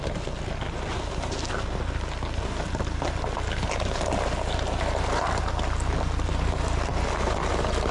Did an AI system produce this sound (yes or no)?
no